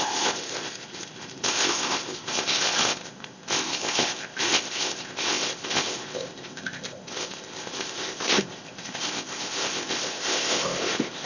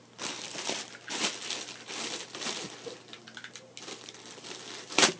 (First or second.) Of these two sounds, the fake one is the first